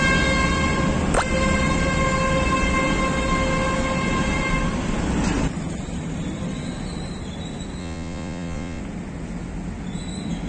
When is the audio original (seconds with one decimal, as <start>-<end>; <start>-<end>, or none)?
0.0-7.8; 8.8-10.5